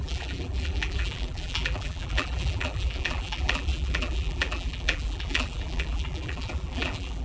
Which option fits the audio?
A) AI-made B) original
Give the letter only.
A